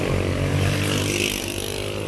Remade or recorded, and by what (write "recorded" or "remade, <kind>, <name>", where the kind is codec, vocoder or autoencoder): recorded